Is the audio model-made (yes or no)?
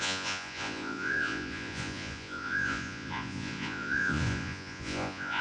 yes